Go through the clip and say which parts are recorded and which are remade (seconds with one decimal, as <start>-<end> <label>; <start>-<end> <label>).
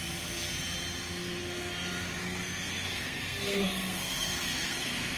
0.0-2.2 recorded; 2.2-5.2 remade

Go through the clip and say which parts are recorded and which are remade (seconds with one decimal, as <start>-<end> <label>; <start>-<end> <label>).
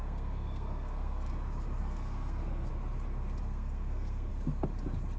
0.0-1.3 remade; 1.3-1.8 recorded; 1.8-2.7 remade; 2.7-3.4 recorded; 3.4-4.3 remade; 4.3-5.2 recorded